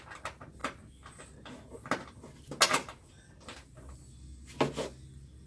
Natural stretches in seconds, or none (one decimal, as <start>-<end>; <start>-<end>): 0.0-5.5